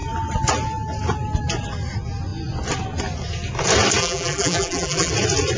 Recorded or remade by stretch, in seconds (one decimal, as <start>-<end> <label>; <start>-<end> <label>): 0.0-4.0 recorded; 4.0-5.1 remade; 5.1-5.6 recorded